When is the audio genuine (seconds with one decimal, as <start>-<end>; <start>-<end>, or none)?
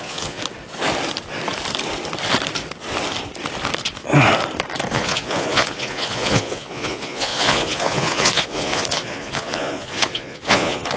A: 0.4-4.9